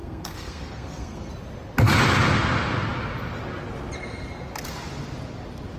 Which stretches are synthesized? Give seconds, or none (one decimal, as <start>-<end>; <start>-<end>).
0.0-1.3